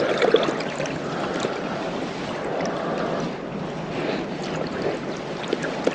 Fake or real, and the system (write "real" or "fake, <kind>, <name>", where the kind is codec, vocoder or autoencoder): real